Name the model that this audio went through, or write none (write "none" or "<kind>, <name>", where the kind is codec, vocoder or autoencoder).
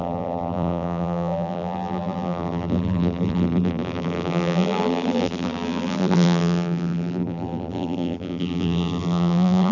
vocoder, BigVGAN v2